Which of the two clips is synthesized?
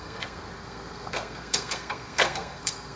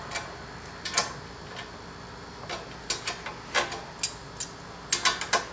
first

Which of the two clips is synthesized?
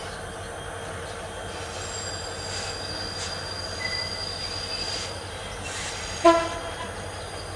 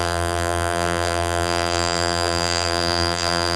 second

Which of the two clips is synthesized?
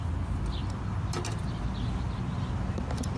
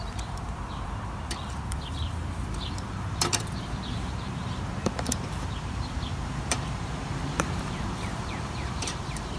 second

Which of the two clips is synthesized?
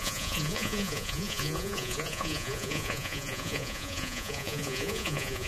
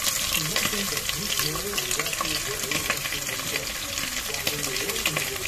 first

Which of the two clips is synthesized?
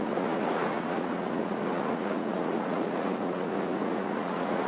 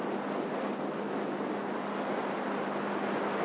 first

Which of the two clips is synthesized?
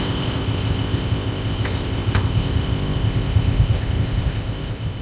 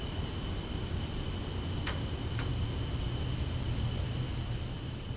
first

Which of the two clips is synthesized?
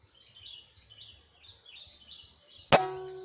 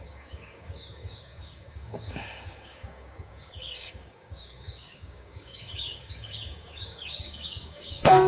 second